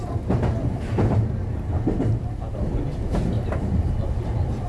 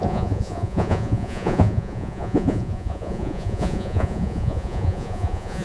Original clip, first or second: first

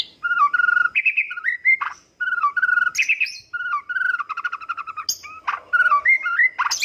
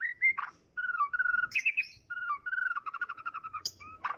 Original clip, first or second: first